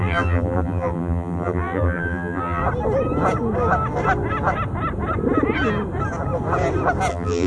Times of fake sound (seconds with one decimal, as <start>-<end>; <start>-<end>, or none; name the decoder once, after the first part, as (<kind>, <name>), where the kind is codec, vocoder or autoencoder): 0.0-2.6 (vocoder, BigVGAN v2); 7.1-7.5